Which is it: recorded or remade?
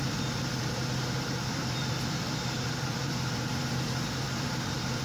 remade